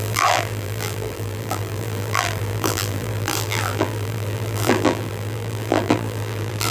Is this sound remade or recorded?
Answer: remade